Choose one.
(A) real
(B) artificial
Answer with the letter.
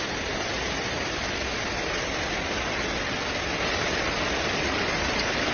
A